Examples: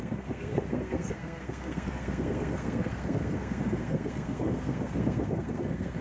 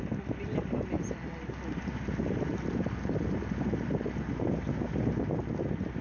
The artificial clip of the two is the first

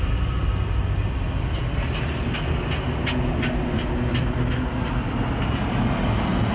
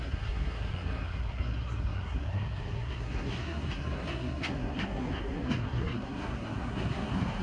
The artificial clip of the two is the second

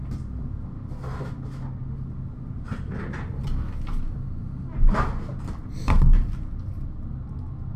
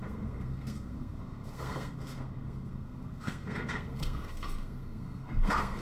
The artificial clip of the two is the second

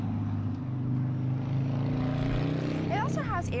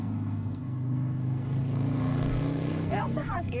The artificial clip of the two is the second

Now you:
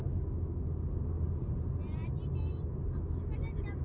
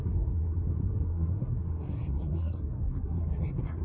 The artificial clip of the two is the second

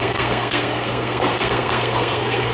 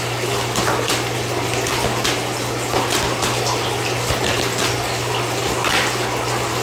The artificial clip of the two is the first